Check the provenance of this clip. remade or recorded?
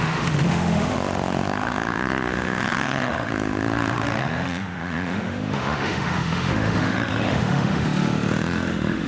remade